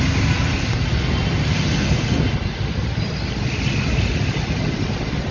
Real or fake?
real